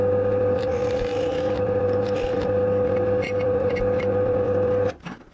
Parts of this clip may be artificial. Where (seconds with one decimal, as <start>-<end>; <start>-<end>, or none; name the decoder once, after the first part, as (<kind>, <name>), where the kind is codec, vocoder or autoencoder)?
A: 1.1-4.3 (vocoder, BigVGAN v2)